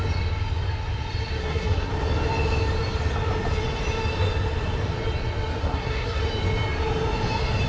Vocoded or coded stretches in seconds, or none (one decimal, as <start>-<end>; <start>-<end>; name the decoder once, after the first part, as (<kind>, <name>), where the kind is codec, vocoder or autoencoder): 1.4-1.9 (codec, SNAC); 5.6-6.2